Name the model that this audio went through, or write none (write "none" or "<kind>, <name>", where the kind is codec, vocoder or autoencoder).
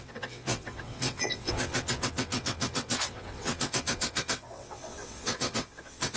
vocoder, WaveNeXt